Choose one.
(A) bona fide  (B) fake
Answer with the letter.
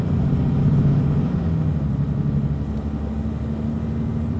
A